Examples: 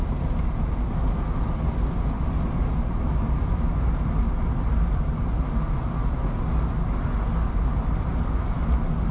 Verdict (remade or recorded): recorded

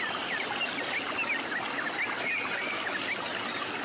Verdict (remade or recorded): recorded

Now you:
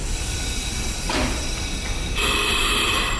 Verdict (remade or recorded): remade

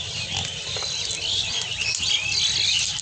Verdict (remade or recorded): recorded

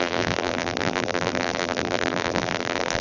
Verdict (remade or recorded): remade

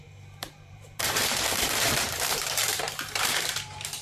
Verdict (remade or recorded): remade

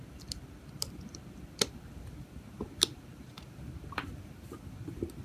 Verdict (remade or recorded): remade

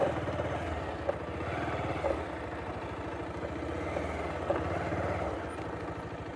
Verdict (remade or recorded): recorded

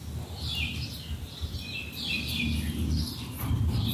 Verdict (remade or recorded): remade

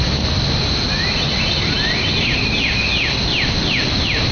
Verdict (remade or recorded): recorded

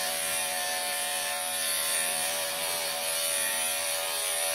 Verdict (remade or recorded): remade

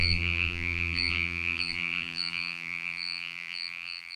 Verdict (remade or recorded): remade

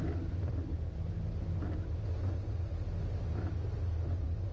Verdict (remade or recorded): recorded